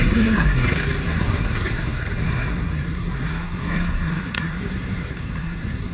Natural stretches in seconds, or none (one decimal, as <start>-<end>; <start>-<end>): none